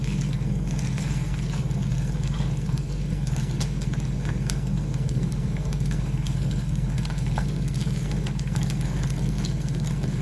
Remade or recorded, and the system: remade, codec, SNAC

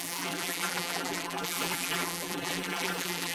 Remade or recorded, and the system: remade, vocoder, BigVGAN v2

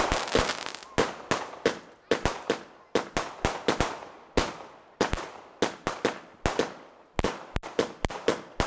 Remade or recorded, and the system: recorded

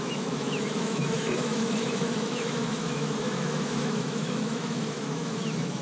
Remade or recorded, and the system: remade, autoencoder, DAC-VAE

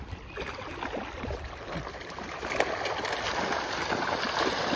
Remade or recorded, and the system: recorded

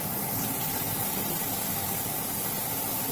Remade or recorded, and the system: recorded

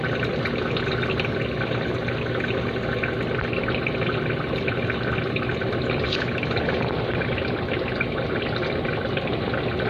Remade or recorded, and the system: recorded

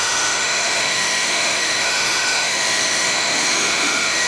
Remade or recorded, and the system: remade, autoencoder, DAC-VAE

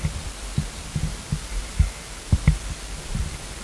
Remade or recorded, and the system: recorded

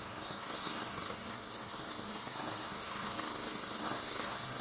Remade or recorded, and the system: remade, codec, SNAC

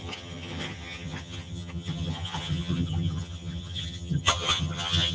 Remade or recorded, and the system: remade, vocoder, HiFi-GAN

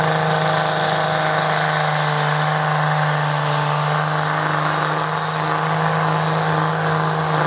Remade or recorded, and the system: recorded